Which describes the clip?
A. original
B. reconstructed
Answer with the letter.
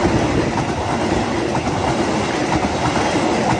A